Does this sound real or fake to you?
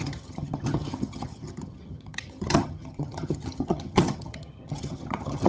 fake